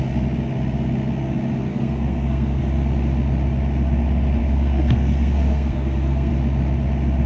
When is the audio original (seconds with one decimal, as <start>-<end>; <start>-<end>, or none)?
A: 0.0-1.7; 2.6-4.4; 6.3-7.3